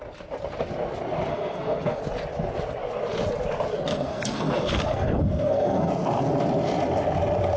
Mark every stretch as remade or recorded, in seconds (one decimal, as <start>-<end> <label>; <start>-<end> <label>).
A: 0.0-1.3 recorded; 1.3-2.0 remade; 2.0-3.9 recorded; 3.9-5.9 remade; 5.9-7.6 recorded